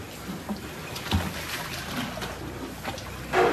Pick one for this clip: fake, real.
real